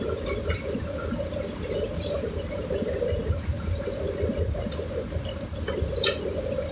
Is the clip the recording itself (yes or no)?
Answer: no